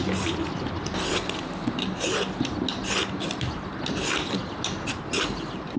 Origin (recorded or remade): recorded